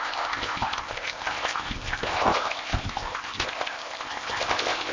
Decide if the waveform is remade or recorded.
remade